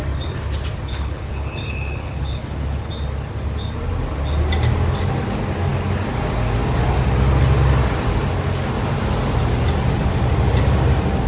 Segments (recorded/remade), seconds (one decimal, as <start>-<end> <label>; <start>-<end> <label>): 0.0-0.9 recorded; 0.9-2.9 remade; 2.9-11.3 recorded